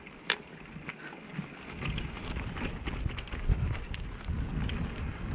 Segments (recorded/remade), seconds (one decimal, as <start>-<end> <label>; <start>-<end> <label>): 0.0-5.3 recorded